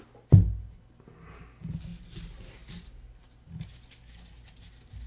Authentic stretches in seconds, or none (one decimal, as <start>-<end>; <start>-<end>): 0.0-5.1